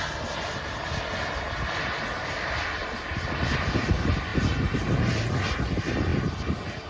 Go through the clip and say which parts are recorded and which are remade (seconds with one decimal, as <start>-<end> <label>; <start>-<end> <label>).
0.0-6.9 recorded